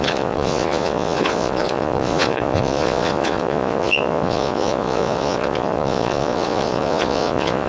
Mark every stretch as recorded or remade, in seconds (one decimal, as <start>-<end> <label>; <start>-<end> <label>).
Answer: 0.0-7.7 remade